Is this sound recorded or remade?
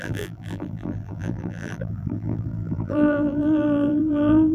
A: remade